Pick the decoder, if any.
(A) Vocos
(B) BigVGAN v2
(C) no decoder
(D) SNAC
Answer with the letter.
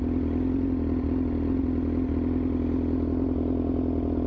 C